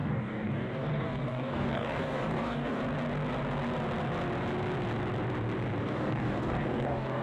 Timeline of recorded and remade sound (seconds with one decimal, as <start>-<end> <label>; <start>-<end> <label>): 0.0-2.8 remade; 2.8-5.8 recorded; 5.8-7.2 remade